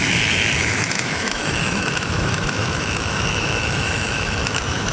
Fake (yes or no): yes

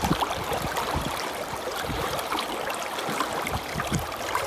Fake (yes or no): no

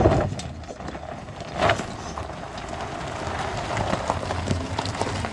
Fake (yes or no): no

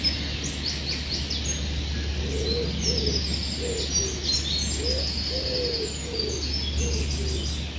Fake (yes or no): no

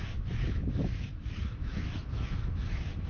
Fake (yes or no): yes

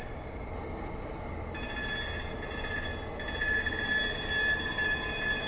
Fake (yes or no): no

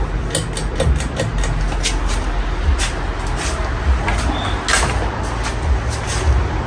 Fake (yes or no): no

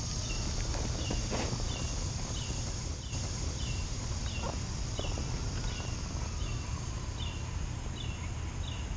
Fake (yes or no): no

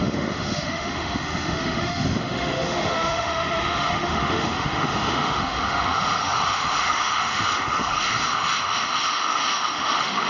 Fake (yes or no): yes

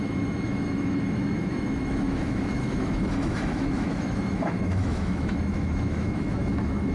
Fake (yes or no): yes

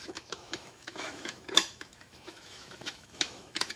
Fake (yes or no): yes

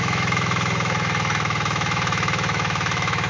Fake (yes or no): yes